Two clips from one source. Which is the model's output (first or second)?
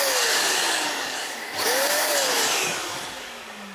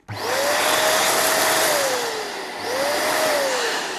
first